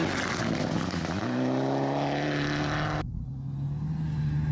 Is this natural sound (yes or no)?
yes